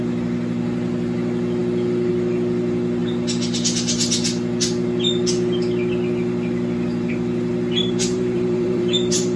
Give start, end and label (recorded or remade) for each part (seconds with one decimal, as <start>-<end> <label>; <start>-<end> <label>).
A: 0.0-7.8 recorded; 7.8-9.4 remade